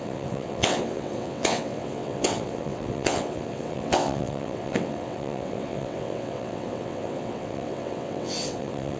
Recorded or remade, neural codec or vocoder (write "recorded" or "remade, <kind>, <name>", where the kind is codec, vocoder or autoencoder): remade, vocoder, WaveNeXt